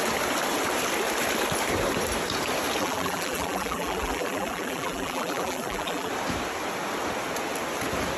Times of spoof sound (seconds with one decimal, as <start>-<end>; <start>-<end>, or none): 2.8-6.1